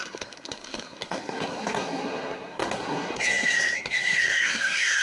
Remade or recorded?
remade